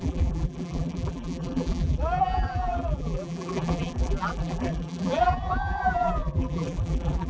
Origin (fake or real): fake